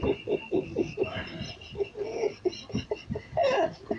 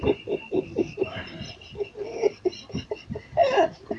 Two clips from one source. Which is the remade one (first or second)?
second